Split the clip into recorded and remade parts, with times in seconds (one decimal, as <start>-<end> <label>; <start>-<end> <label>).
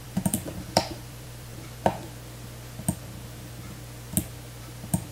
0.0-1.5 remade; 1.5-4.6 recorded; 4.6-5.1 remade